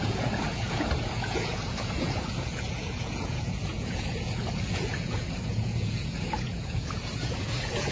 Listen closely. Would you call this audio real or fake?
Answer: fake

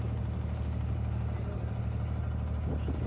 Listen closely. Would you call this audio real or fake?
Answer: real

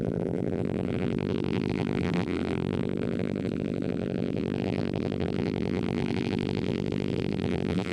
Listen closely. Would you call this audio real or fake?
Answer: fake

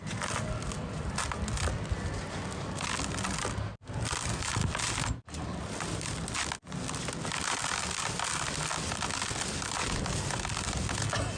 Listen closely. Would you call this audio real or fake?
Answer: real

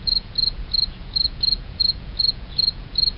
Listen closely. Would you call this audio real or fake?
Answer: fake